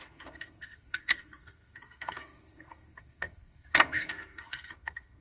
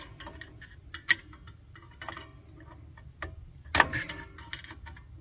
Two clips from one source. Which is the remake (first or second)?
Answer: first